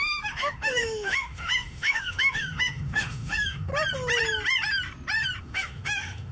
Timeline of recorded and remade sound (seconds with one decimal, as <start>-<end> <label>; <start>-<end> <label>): 0.0-3.7 remade; 3.7-5.4 recorded; 5.4-6.3 remade